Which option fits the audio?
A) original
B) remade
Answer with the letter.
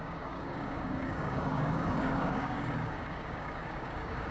B